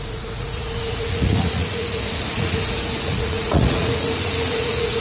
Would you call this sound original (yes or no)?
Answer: no